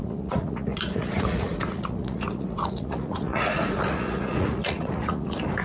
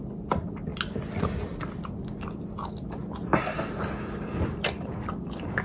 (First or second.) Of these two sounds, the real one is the second